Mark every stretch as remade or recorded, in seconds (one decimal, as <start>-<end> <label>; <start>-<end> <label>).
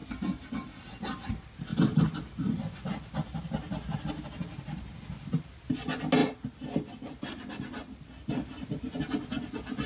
0.0-0.8 remade; 0.8-1.7 recorded; 1.7-2.8 remade; 2.8-9.9 recorded